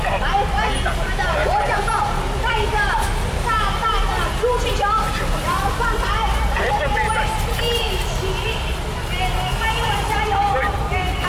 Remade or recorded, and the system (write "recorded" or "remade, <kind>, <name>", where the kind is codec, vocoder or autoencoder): recorded